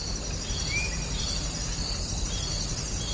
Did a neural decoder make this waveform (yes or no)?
no